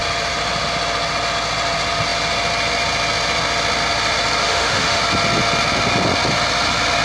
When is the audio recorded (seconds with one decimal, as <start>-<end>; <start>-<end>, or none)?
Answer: 0.0-4.4; 5.0-7.0